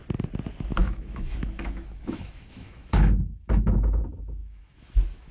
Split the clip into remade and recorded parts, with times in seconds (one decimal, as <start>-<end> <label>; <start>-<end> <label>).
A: 0.0-0.8 recorded; 0.8-4.0 remade; 4.0-4.4 recorded; 4.4-5.3 remade